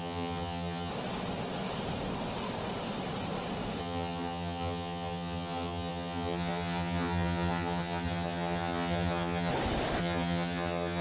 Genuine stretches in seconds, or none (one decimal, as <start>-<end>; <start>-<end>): 0.9-3.8; 9.5-10.0